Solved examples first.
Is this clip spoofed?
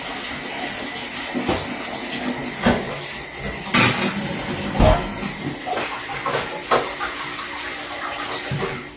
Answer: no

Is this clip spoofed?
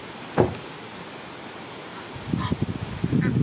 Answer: no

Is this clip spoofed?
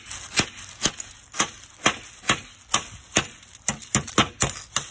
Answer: no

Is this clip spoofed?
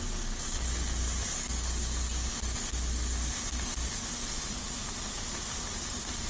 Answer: no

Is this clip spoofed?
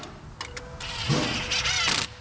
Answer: no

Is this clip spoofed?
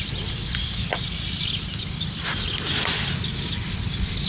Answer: no